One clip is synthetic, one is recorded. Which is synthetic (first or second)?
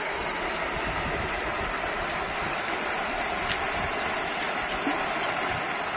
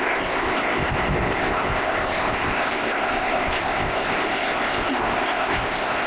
second